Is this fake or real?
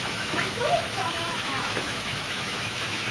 fake